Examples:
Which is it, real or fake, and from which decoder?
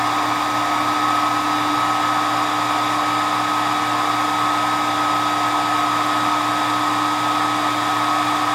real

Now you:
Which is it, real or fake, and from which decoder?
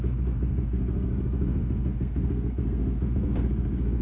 fake, codec, SNAC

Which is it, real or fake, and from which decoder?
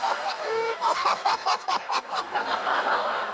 fake, codec, DAC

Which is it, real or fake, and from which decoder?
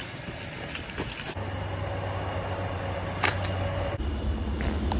real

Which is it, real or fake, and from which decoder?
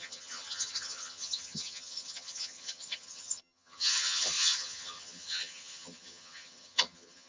fake, vocoder, HiFi-GAN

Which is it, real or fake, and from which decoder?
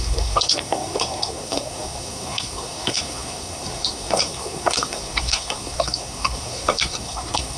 fake, codec, SNAC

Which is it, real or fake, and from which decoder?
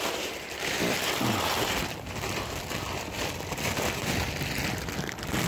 fake, vocoder, BigVGAN v2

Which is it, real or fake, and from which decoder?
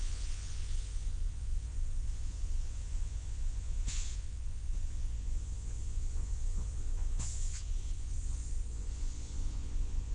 fake, vocoder, Vocos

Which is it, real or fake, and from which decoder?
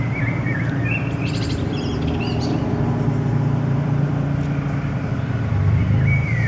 fake, vocoder, BigVGAN v2